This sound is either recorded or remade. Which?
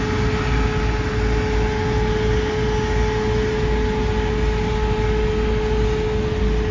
recorded